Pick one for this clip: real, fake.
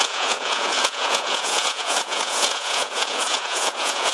fake